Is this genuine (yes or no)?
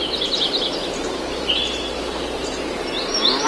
yes